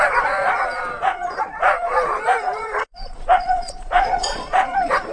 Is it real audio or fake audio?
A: fake